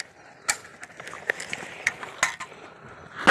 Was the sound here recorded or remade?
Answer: recorded